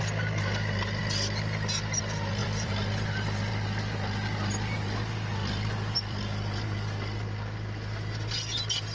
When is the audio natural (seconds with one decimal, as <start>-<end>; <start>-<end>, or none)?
0.0-2.4; 3.5-5.4; 6.2-8.9